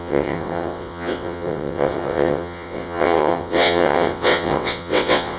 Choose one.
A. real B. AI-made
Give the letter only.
B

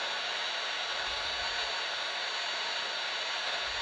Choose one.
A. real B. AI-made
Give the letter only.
A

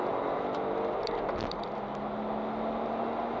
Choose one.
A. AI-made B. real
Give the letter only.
B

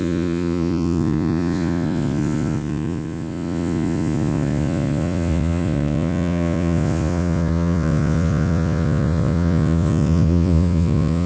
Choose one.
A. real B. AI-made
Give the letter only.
B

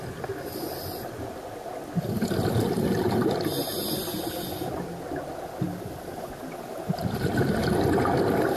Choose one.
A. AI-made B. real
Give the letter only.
B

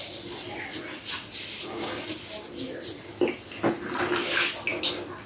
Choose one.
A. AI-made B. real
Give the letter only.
B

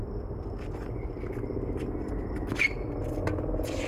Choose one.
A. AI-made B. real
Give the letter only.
B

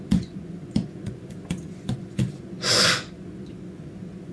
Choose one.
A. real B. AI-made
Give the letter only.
B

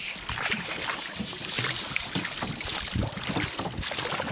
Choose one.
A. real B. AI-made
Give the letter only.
A